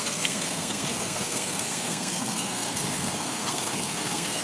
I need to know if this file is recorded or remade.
remade